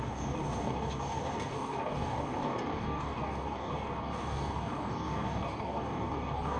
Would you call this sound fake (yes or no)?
yes